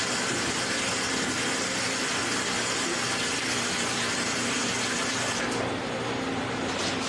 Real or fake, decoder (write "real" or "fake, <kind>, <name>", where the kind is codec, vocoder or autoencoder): real